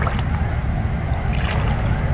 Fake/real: real